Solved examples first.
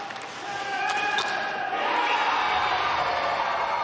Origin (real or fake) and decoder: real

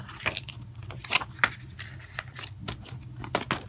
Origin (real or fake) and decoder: real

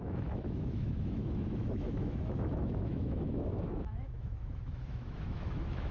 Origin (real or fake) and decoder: fake, autoencoder, DAC-VAE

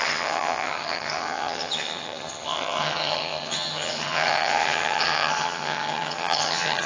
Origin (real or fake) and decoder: fake, vocoder, HiFi-GAN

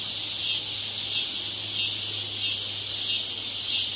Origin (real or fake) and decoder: real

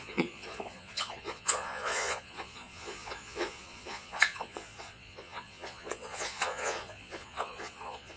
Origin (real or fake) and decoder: fake, vocoder, Vocos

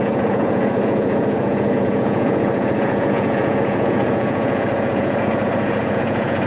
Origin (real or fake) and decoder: fake, vocoder, Vocos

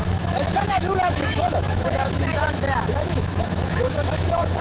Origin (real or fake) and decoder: fake, autoencoder, DAC-VAE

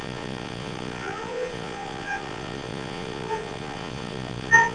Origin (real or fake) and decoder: fake, vocoder, Vocos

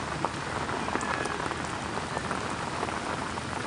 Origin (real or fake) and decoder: real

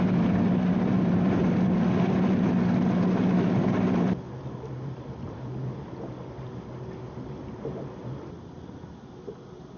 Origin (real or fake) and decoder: real